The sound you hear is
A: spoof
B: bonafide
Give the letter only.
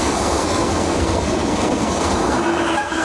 A